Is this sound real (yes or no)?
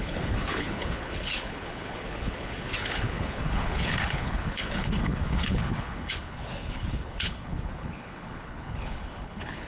no